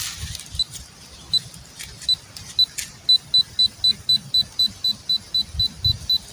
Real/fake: real